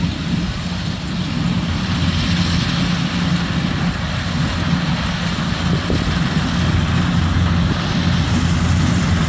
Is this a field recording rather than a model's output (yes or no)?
yes